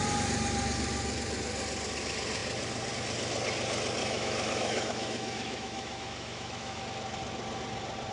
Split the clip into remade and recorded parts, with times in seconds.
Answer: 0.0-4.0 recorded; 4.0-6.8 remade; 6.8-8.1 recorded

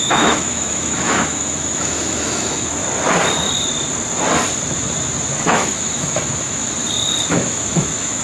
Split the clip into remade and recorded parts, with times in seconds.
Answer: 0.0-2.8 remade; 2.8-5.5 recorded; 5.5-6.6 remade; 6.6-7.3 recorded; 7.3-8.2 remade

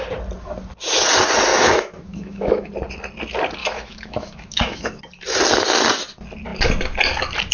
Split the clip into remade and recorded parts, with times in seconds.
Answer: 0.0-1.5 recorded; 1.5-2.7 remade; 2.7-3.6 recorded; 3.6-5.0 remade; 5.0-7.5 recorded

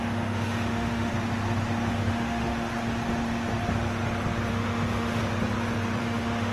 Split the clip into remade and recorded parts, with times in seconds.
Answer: 0.0-1.1 remade; 1.1-1.9 recorded; 1.9-2.5 remade; 2.5-4.5 recorded; 4.5-5.2 remade; 5.2-6.0 recorded; 6.0-6.5 remade

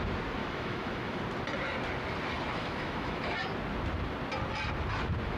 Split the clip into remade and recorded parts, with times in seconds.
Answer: 0.0-0.4 recorded; 0.4-1.2 remade; 1.2-2.6 recorded; 2.6-3.2 remade; 3.2-5.4 recorded

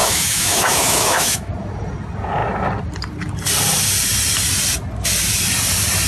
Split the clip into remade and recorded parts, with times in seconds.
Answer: 0.0-1.5 remade; 1.5-6.1 recorded

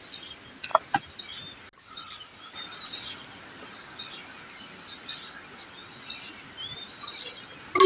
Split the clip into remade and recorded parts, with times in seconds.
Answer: 0.0-7.9 recorded

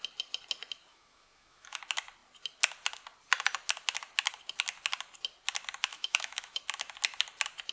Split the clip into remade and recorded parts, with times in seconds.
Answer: 0.0-0.9 recorded; 0.9-1.8 remade; 1.8-5.9 recorded; 5.9-6.6 remade; 6.6-7.7 recorded